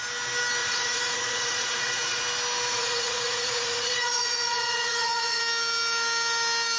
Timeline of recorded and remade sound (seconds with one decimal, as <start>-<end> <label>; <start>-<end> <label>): 0.0-0.6 recorded; 0.6-2.2 remade; 2.2-2.7 recorded; 2.7-5.4 remade; 5.4-6.8 recorded